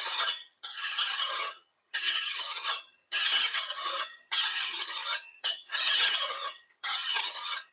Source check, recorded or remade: remade